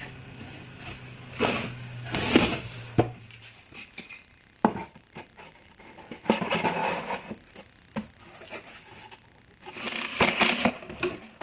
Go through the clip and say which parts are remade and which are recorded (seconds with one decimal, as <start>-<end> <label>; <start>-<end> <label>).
0.0-2.3 recorded; 2.3-3.4 remade; 3.4-4.8 recorded; 4.8-5.8 remade; 5.8-11.4 recorded